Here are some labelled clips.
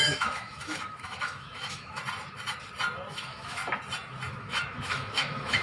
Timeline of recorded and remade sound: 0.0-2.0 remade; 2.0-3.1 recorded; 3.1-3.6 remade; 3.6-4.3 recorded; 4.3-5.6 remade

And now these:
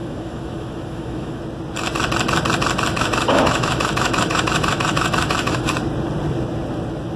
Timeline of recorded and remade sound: 0.0-1.4 remade; 1.4-2.9 recorded; 2.9-5.7 remade; 5.7-7.2 recorded

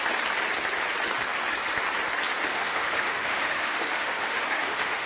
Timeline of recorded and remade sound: 0.0-2.5 recorded; 2.5-5.1 remade

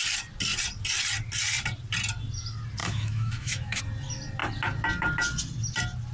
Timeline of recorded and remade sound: 0.0-2.8 recorded; 2.8-3.8 remade; 3.8-6.1 recorded

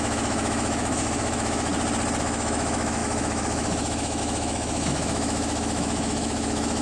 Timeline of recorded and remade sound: 0.0-1.7 remade; 1.7-2.2 recorded; 2.2-6.8 remade

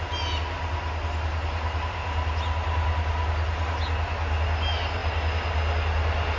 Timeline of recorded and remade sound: 0.0-6.4 recorded